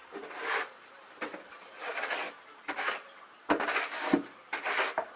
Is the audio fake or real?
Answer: real